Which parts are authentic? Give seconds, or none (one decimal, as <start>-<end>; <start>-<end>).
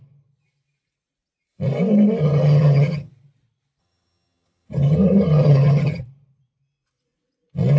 0.0-2.2; 3.1-3.8; 6.0-7.8